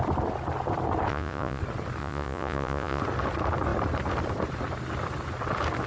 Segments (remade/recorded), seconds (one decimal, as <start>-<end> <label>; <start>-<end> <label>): 0.0-1.1 recorded; 1.1-1.6 remade; 1.6-2.0 recorded; 2.0-3.0 remade; 3.0-5.9 recorded